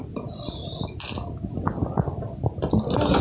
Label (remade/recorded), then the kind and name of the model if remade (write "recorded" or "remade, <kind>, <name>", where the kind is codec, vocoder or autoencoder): recorded